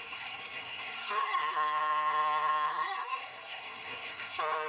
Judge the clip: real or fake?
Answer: fake